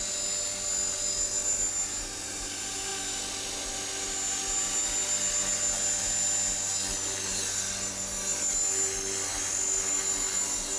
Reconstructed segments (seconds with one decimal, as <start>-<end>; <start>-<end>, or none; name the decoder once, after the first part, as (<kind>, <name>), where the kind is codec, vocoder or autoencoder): none